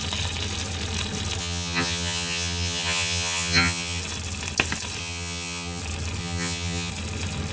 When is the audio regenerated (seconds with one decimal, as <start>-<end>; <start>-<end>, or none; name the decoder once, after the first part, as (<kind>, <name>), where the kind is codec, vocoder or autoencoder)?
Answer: 1.4-4.0 (vocoder, HiFi-GAN); 5.0-5.8; 6.2-6.9